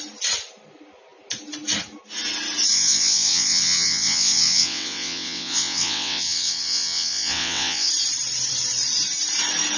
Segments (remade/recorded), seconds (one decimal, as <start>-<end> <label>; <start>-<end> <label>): 0.0-2.7 recorded; 2.7-7.9 remade; 7.9-9.8 recorded

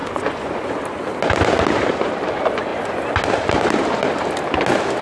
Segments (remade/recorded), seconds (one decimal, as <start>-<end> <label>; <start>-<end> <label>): 0.0-0.7 remade; 0.7-5.0 recorded

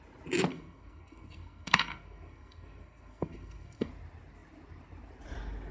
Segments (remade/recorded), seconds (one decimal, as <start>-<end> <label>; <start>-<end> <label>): 0.0-0.5 recorded; 0.5-3.9 remade; 3.9-5.7 recorded

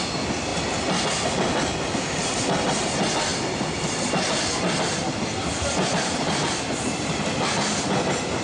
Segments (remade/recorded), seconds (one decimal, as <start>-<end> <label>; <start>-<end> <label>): 0.0-8.4 recorded